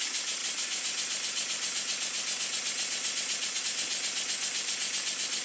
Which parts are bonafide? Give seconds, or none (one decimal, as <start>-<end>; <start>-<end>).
0.0-5.4

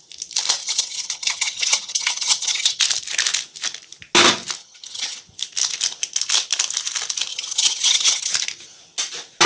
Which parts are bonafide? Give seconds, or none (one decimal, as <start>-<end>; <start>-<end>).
0.0-0.6; 2.8-4.6; 5.2-7.3; 8.3-9.5